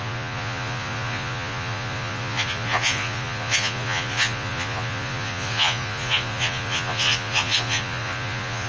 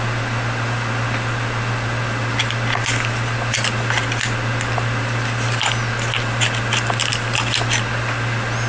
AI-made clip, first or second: first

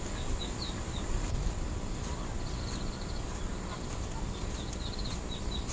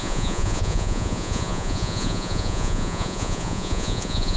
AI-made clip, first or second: second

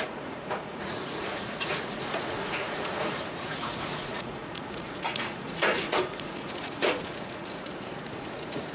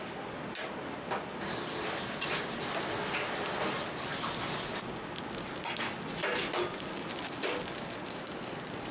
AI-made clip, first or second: first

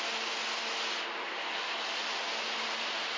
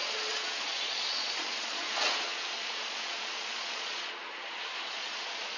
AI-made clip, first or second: second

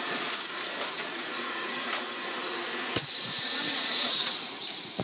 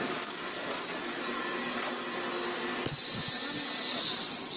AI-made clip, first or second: first